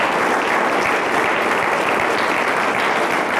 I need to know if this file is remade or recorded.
recorded